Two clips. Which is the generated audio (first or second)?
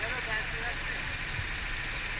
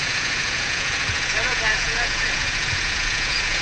second